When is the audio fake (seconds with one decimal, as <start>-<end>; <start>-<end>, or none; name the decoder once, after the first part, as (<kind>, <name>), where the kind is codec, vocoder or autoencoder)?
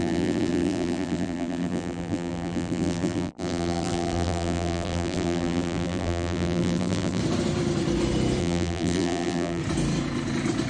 0.0-7.2 (vocoder, BigVGAN v2); 8.4-9.6